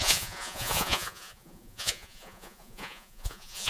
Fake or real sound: fake